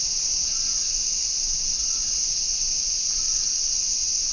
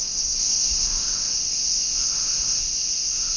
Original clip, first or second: first